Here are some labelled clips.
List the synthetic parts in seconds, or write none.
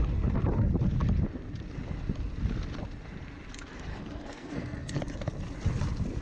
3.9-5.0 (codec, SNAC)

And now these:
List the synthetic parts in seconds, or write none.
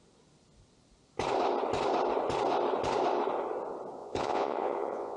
4.0-5.2 (vocoder, Vocos)